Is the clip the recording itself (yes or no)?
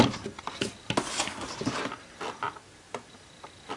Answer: yes